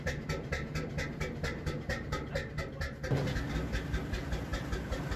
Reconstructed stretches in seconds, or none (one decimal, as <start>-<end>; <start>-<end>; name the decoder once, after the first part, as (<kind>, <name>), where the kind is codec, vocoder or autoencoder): none